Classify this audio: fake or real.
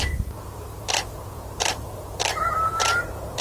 fake